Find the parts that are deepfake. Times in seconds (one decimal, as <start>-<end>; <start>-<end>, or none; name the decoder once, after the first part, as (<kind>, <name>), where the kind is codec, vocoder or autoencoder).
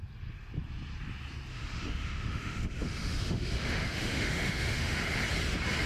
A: 1.5-5.0 (autoencoder, DAC-VAE)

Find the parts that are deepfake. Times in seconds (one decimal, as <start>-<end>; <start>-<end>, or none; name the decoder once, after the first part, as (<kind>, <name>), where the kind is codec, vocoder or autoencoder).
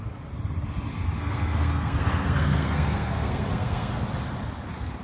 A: 0.9-3.9 (codec, SNAC)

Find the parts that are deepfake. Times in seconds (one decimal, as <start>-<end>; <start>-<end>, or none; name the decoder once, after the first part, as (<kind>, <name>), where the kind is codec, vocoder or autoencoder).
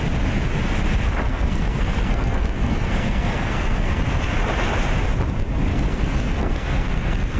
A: 1.3-4.0 (codec, SNAC); 5.7-7.4